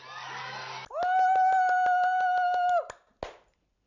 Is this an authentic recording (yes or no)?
yes